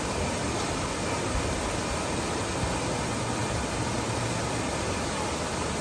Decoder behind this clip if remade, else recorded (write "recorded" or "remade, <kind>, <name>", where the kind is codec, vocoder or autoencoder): recorded